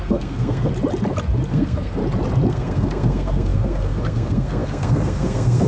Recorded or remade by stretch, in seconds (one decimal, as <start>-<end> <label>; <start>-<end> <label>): 0.0-0.7 remade; 0.7-1.5 recorded; 1.5-2.0 remade; 2.0-2.5 recorded; 2.5-5.7 remade